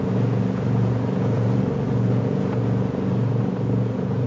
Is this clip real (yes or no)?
no